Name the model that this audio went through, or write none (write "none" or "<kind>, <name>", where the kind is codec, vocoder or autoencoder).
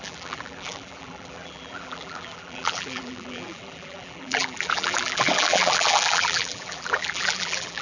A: vocoder, BigVGAN v2